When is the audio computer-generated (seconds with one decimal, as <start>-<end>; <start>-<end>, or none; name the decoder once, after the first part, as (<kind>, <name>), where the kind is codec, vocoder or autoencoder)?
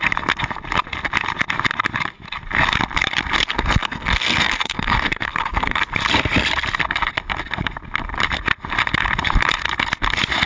3.4-5.9 (codec, SNAC)